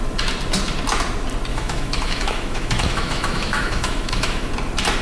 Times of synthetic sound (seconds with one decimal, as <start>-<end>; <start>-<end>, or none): 1.5-4.5